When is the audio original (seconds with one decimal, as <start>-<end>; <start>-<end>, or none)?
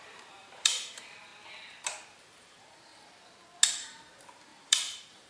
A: 1.3-2.2; 2.9-3.7